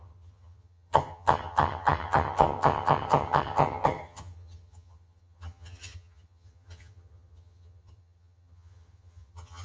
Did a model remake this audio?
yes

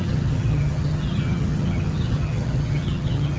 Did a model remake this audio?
yes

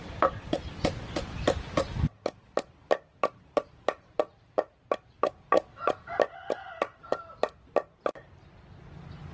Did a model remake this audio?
no